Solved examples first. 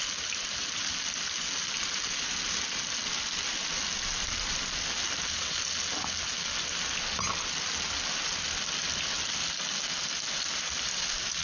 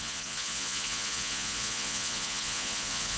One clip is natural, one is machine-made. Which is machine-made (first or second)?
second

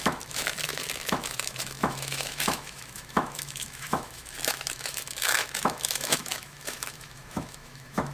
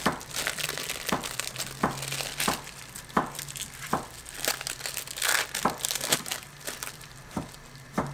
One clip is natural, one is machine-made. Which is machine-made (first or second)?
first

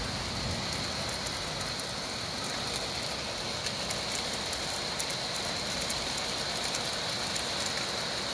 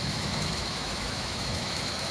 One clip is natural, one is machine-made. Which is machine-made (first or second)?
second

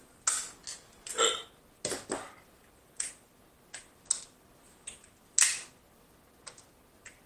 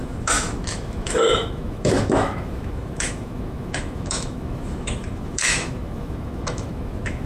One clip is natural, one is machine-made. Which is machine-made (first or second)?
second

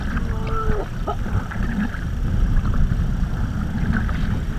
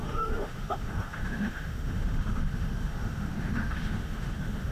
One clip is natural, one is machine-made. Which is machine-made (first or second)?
second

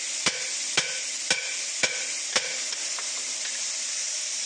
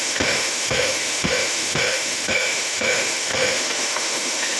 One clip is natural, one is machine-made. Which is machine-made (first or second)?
second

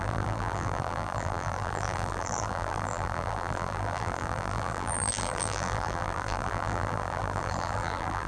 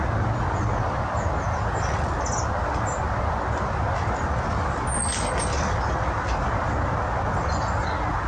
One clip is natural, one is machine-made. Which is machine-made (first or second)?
first